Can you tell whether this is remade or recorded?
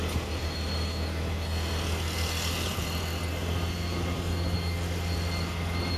recorded